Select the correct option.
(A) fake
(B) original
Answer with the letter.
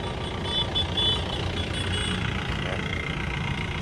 B